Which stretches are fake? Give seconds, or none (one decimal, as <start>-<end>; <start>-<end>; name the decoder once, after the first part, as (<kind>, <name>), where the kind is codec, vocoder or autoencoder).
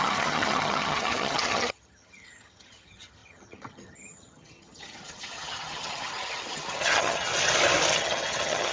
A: 0.0-7.3 (vocoder, HiFi-GAN); 7.9-8.7